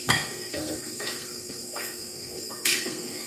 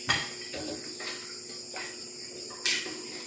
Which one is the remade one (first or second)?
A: first